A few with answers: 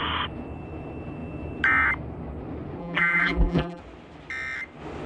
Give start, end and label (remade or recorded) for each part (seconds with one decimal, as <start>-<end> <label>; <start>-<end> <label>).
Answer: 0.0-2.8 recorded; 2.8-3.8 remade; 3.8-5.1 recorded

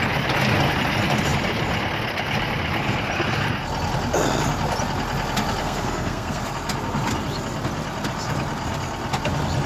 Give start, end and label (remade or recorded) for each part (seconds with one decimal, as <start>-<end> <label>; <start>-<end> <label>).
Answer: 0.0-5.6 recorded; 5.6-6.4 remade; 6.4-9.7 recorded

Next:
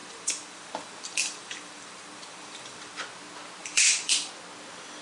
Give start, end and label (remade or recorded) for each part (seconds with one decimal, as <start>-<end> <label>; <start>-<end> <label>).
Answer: 0.0-3.0 remade; 3.0-3.6 recorded; 3.6-4.3 remade; 4.3-5.0 recorded

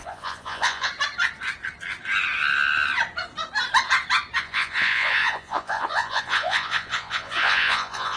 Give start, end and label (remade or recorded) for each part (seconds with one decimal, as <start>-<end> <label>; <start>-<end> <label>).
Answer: 0.0-0.9 remade; 0.9-4.4 recorded; 4.4-8.2 remade

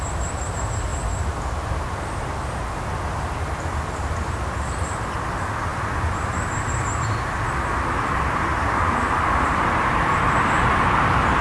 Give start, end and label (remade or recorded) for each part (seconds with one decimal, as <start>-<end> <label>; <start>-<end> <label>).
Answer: 0.0-11.4 recorded